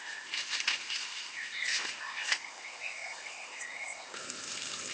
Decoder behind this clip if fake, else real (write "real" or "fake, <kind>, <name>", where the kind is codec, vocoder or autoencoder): fake, codec, ZipCodec